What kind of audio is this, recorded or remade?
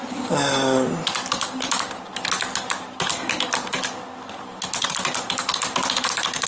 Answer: recorded